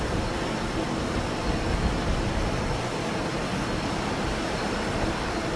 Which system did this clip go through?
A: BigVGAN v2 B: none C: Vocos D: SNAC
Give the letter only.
B